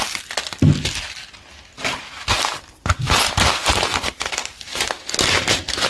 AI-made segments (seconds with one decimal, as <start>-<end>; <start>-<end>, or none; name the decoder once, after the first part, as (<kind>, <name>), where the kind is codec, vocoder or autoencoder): none